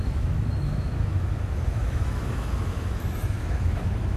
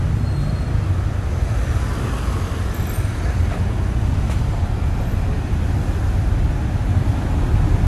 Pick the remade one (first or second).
first